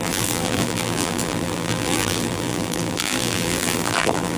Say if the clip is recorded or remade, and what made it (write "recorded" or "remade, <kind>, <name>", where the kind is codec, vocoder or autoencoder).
remade, vocoder, BigVGAN v2